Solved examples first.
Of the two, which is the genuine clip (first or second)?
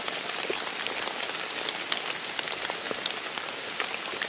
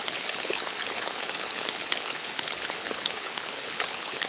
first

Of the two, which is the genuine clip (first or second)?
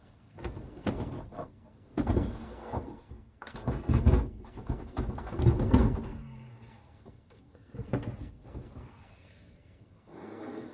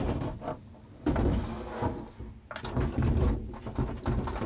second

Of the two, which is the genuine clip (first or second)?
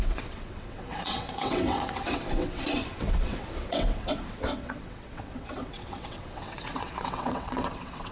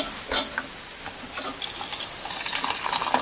second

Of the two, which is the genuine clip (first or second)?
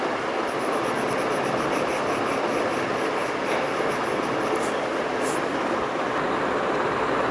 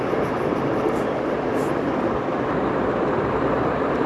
first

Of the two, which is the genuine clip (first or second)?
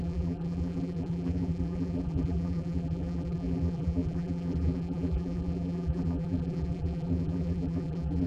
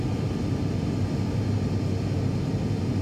second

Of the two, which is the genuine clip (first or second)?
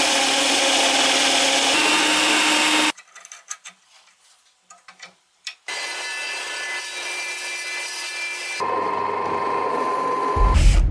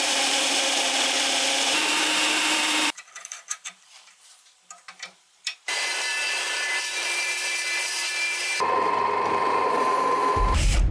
first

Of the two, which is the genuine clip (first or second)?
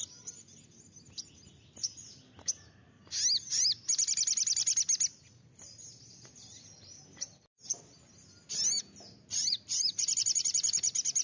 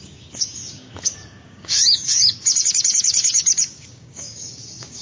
first